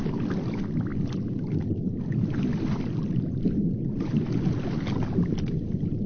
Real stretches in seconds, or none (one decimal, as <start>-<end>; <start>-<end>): 0.0-6.1